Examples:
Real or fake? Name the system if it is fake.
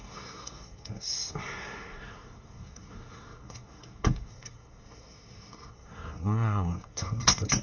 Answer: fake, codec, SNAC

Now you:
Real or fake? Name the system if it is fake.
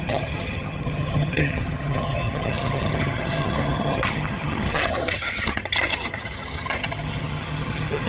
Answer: fake, vocoder, HiFi-GAN